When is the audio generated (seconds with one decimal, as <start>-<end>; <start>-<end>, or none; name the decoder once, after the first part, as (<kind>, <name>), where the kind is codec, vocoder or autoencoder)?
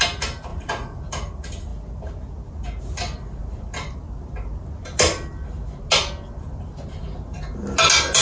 0.5-1.0 (vocoder, Vocos)